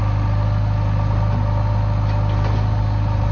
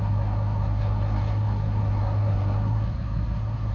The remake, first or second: second